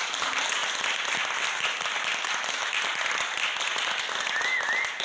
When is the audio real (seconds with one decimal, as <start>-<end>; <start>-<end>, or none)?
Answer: 0.0-5.0